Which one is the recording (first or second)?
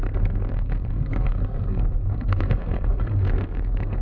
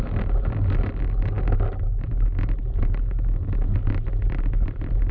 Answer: second